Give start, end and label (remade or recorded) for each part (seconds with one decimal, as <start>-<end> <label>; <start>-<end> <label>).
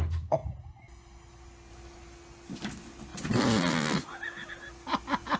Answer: 0.0-5.4 recorded